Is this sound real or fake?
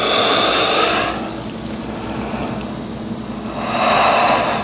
real